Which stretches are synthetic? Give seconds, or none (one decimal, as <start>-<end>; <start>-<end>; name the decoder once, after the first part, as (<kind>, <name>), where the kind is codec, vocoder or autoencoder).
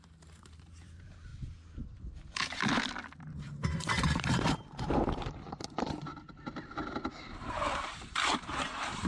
0.0-1.3 (vocoder, BigVGAN v2); 3.2-6.1; 7.1-9.1